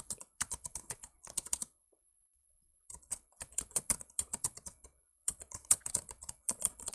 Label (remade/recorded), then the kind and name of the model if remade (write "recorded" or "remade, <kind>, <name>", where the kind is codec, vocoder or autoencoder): remade, vocoder, Vocos